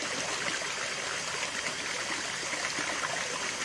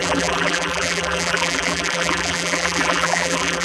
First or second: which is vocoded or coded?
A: second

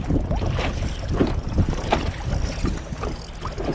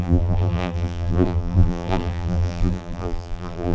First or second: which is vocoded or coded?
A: second